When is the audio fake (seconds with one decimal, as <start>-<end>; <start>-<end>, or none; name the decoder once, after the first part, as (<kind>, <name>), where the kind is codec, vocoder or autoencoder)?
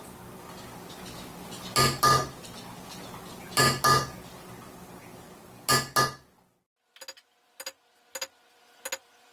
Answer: none